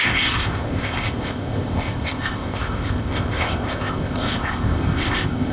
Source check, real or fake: fake